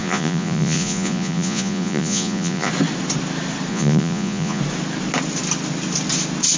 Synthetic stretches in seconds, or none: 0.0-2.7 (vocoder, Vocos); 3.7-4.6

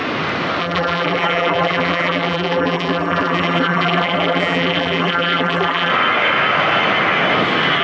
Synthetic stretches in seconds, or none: 0.6-5.9 (vocoder, BigVGAN v2)

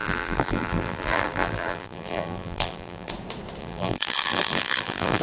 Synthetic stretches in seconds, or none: 0.0-3.1 (vocoder, BigVGAN v2); 3.6-5.2